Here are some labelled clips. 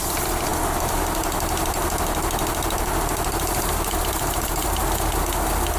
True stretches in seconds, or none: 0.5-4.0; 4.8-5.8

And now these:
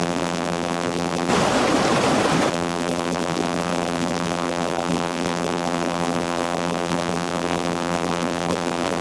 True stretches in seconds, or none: 1.3-2.5

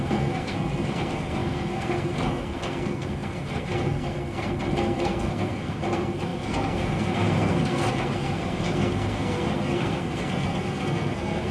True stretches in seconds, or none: none